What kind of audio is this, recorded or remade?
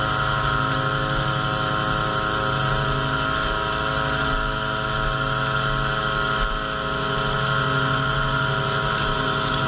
recorded